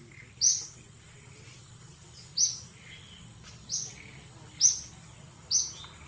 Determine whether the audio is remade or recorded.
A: recorded